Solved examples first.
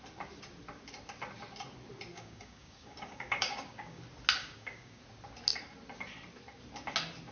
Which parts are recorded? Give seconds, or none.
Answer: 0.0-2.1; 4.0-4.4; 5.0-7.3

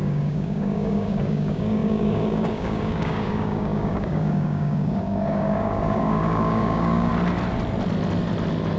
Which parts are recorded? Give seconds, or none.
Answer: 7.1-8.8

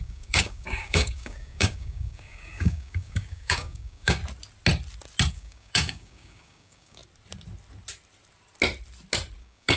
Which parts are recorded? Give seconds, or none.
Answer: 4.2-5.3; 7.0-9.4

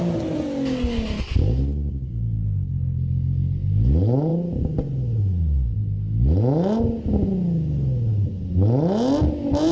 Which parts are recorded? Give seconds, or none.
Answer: 0.0-9.7

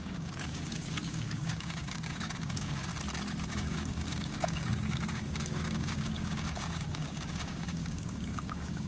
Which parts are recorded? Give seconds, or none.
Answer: 2.9-3.5